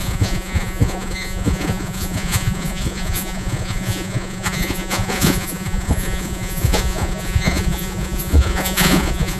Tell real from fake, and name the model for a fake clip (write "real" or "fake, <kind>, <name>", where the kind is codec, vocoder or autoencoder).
fake, vocoder, Vocos